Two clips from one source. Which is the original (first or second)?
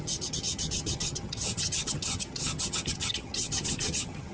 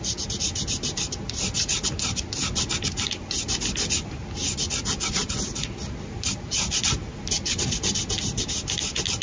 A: second